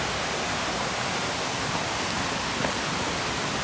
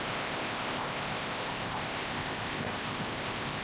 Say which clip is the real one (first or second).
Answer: first